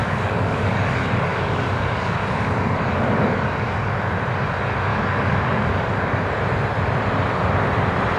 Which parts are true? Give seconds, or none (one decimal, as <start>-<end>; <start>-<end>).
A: 4.0-4.9; 6.2-8.2

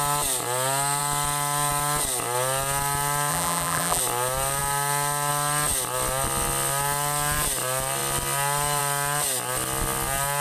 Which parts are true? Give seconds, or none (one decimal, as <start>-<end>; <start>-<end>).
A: 0.0-3.3; 4.0-10.4

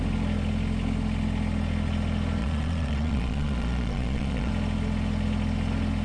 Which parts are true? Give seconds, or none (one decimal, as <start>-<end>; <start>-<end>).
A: 0.0-2.4; 4.5-6.0

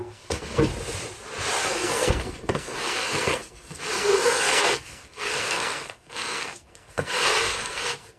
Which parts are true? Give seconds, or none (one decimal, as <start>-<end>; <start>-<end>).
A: 0.7-1.6

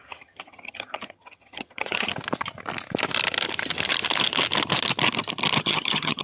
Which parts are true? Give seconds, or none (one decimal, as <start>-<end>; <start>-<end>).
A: 2.1-5.6